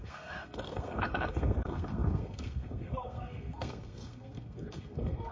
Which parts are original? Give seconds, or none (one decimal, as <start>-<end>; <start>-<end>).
none